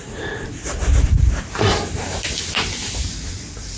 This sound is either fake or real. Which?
fake